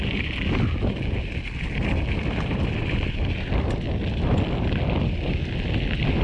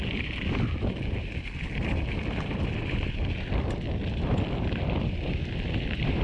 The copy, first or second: second